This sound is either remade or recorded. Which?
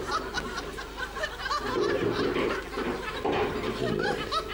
recorded